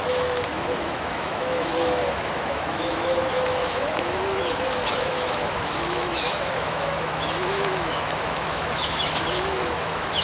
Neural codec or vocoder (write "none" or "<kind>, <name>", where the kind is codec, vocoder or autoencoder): autoencoder, DAC-VAE